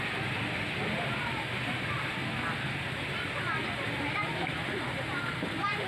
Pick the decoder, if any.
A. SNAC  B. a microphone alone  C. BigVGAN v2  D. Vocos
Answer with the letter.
B